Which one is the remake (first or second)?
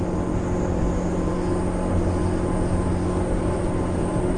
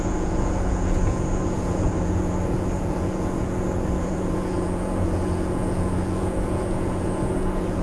second